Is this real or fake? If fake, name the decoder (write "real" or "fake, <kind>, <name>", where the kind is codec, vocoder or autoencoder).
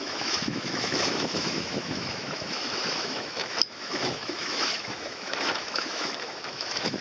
fake, autoencoder, DAC-VAE